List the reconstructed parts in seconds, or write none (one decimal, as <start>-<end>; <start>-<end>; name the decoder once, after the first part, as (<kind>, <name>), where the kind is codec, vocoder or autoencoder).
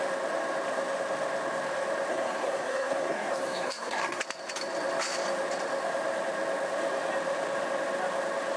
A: 2.1-4.2 (codec, SNAC)